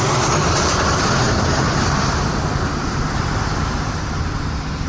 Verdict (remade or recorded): remade